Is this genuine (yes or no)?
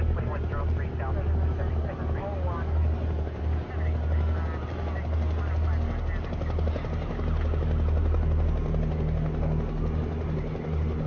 yes